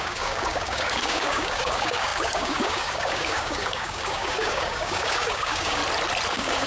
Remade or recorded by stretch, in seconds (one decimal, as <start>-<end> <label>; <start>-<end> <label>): 0.0-5.8 remade; 5.8-6.3 recorded; 6.3-6.7 remade